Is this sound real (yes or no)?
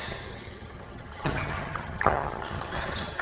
no